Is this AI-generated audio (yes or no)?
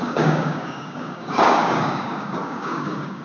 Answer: yes